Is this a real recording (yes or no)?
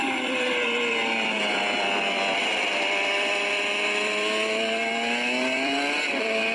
no